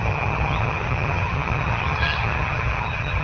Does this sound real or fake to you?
fake